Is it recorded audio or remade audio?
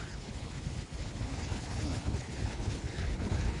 remade